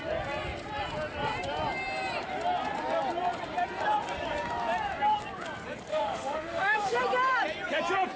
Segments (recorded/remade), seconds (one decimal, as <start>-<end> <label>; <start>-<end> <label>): 0.0-5.9 recorded; 5.9-7.0 remade; 7.0-8.2 recorded